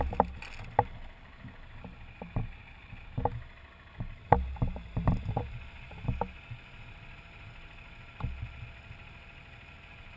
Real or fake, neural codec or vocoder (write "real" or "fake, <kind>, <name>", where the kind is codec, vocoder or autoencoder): real